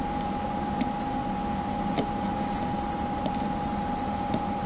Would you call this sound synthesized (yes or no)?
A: no